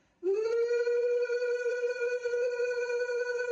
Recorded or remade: remade